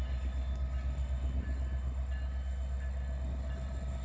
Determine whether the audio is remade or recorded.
recorded